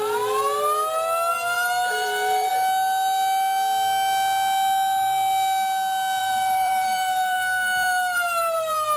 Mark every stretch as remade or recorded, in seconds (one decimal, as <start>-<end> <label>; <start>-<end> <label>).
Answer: 0.0-1.3 recorded; 1.3-2.5 remade; 2.5-6.2 recorded; 6.2-9.0 remade